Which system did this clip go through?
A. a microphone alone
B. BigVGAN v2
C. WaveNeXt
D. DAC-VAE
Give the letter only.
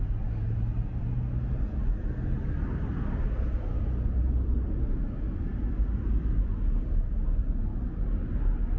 A